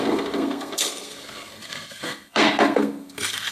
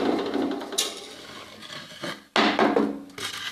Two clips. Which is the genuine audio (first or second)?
second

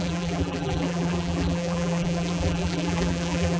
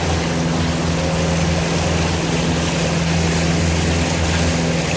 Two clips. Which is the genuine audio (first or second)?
second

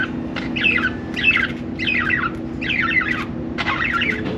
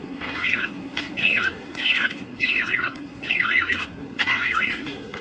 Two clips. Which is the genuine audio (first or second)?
first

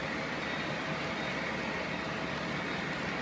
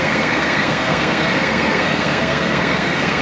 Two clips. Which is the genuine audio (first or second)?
first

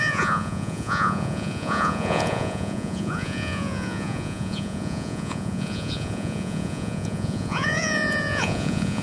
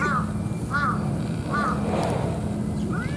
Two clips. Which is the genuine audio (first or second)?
second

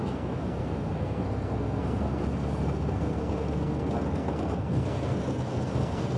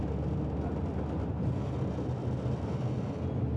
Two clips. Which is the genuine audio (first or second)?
second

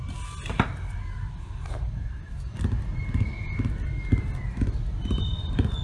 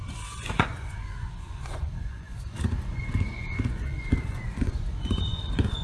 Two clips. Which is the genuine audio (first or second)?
first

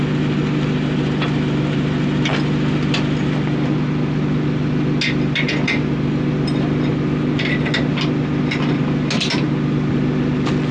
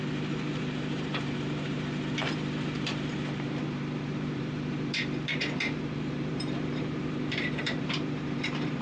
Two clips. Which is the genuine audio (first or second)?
first